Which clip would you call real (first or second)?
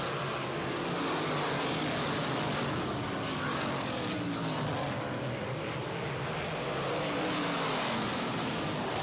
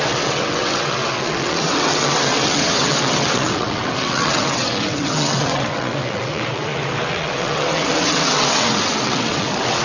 first